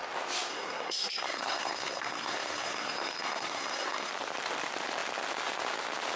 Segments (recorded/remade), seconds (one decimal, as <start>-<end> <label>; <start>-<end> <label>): 0.0-0.5 recorded; 0.5-4.1 remade; 4.1-6.2 recorded